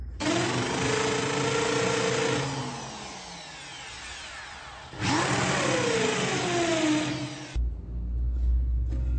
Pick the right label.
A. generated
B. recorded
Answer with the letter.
B